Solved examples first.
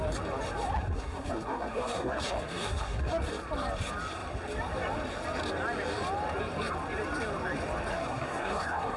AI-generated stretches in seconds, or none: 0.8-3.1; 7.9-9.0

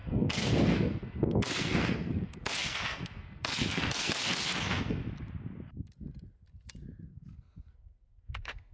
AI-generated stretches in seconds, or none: 0.0-5.0; 7.1-8.7

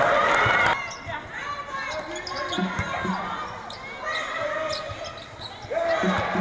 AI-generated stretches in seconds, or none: none